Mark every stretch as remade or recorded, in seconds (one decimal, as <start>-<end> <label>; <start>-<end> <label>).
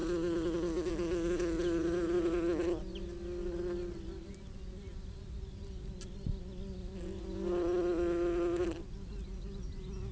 0.0-10.1 recorded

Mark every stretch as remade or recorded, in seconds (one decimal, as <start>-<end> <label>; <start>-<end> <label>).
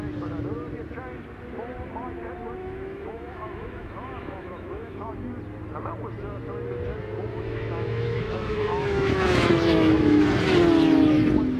0.0-2.6 recorded; 2.6-5.1 remade; 5.1-7.3 recorded; 7.3-10.2 remade; 10.2-11.6 recorded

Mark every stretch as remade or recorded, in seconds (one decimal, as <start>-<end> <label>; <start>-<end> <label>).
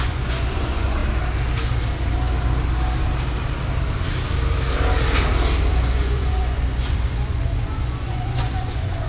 0.0-1.0 remade; 1.0-5.8 recorded; 5.8-9.1 remade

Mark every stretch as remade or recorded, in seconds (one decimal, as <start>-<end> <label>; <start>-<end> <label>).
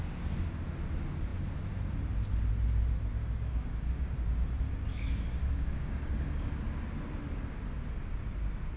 0.0-3.2 recorded; 3.2-4.1 remade; 4.1-4.9 recorded; 4.9-6.5 remade; 6.5-8.8 recorded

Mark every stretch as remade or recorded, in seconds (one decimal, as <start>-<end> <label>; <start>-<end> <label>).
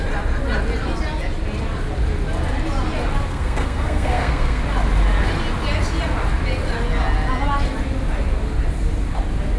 0.0-3.3 recorded; 3.3-4.6 remade; 4.6-9.6 recorded